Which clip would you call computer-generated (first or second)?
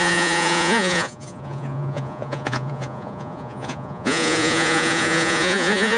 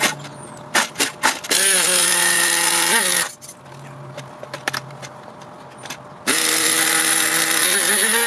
first